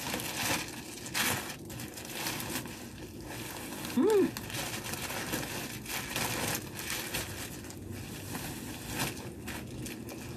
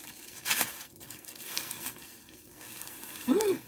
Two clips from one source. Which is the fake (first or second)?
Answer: second